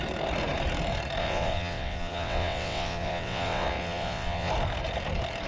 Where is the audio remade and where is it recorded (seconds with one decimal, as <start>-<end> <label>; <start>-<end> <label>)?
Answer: 0.0-1.2 recorded; 1.2-4.5 remade; 4.5-5.5 recorded